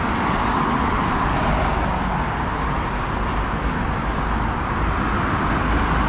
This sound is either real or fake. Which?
real